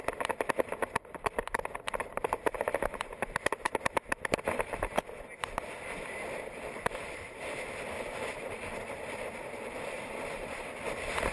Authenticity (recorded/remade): recorded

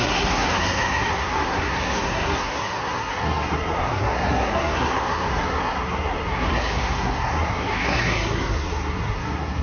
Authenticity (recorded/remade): remade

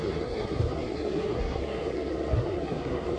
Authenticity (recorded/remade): remade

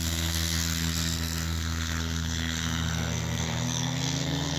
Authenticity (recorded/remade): remade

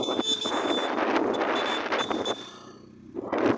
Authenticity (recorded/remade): recorded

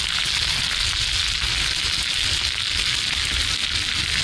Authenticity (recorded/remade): recorded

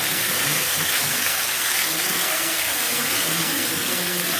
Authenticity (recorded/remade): remade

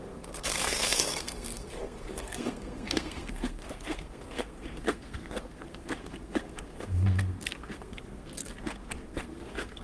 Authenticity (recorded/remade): remade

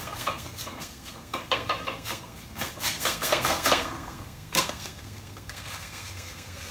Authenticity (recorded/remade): remade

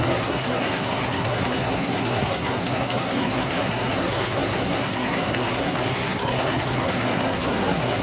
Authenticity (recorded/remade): remade